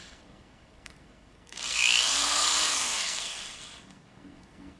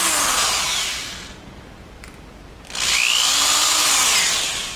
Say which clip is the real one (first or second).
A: second